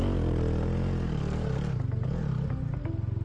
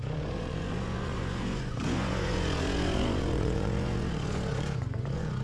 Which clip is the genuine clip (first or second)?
first